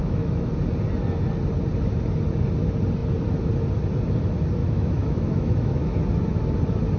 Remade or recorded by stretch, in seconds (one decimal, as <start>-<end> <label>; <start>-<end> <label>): 0.0-0.5 remade; 0.5-4.6 recorded; 4.6-6.0 remade; 6.0-7.0 recorded